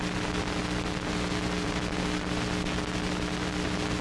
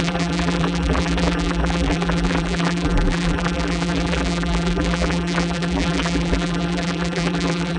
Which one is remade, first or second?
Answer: second